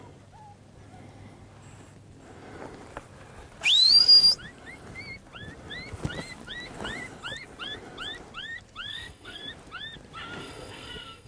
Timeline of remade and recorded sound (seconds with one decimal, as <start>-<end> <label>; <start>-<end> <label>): 0.0-8.9 recorded; 8.9-9.4 remade; 9.4-10.4 recorded; 10.4-11.3 remade